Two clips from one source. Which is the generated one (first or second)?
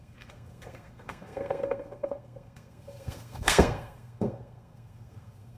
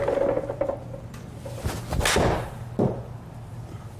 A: first